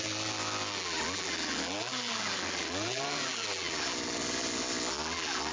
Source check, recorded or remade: remade